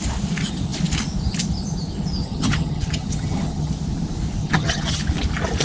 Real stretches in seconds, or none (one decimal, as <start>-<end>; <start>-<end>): 0.0-2.2; 3.7-4.4; 5.0-5.6